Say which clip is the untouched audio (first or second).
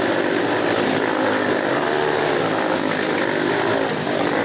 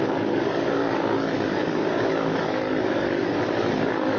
first